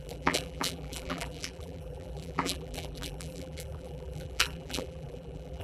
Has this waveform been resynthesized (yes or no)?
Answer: yes